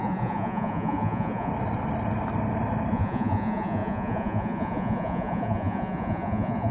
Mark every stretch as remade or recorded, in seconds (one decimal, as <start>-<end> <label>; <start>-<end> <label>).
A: 0.0-1.5 remade; 1.5-2.9 recorded; 2.9-6.7 remade